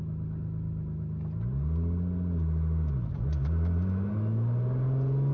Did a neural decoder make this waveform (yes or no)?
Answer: no